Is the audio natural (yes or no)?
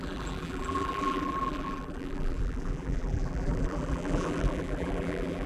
no